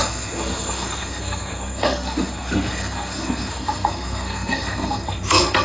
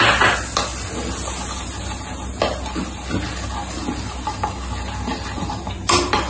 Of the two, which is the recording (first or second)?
second